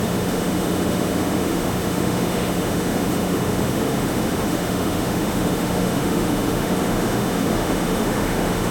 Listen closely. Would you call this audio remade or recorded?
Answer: remade